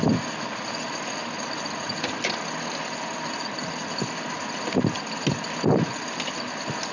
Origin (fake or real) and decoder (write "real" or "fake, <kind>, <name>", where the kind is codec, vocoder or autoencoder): real